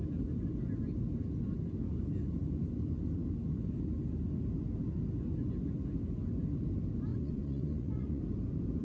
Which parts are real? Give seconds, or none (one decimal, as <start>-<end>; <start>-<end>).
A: 0.0-7.1; 8.2-8.8

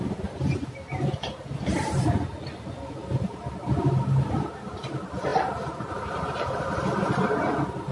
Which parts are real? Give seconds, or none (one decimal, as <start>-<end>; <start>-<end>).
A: 0.0-7.9

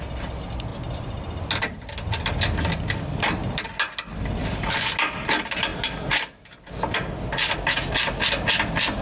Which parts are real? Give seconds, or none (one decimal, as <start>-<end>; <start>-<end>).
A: 0.0-9.0